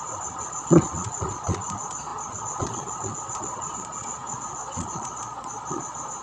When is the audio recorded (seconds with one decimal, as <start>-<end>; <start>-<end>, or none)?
none

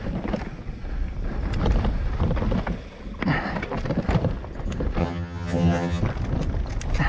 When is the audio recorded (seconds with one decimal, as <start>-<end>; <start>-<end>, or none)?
0.0-5.0; 6.0-7.1

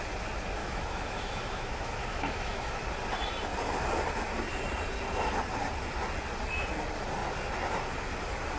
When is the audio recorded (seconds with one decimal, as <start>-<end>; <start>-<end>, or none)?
0.0-0.6; 2.8-8.6

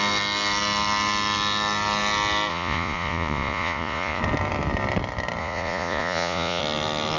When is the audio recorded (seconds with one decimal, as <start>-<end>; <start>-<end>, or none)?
0.0-2.5; 4.2-5.4; 6.6-7.2

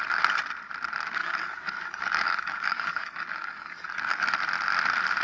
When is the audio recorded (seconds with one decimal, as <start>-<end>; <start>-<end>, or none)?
0.0-1.2; 4.3-5.2

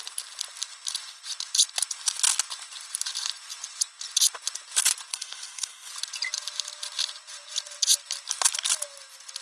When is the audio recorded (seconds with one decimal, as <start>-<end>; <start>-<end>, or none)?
0.0-5.1; 5.9-9.4